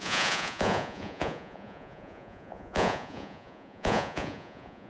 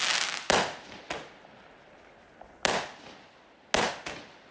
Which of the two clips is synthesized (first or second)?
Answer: first